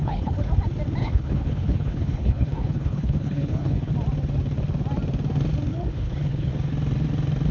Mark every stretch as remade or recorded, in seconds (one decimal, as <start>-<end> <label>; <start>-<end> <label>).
0.0-0.5 remade; 0.5-1.0 recorded; 1.0-3.9 remade; 3.9-5.7 recorded; 5.7-6.5 remade; 6.5-7.5 recorded